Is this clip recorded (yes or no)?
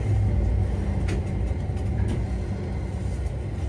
yes